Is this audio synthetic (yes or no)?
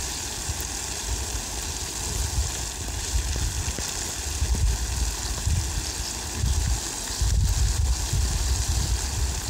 no